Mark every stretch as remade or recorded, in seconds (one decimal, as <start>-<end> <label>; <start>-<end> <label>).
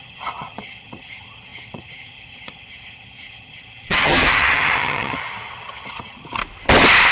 0.0-6.4 remade; 6.4-7.1 recorded